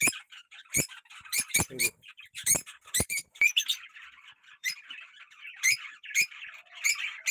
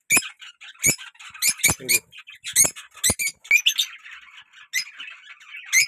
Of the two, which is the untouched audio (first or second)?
second